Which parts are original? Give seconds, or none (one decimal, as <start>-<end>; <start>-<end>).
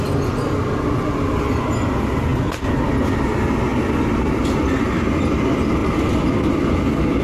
0.0-7.2